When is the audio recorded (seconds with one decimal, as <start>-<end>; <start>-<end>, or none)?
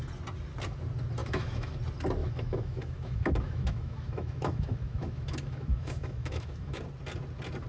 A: 0.0-1.2; 1.8-2.2; 6.8-7.7